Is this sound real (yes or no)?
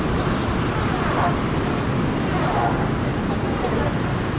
yes